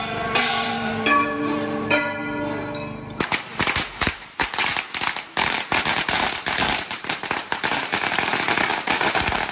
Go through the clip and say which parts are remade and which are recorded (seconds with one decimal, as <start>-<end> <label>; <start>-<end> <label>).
0.0-2.2 remade; 2.2-3.8 recorded; 3.8-4.7 remade; 4.7-5.3 recorded; 5.3-9.5 remade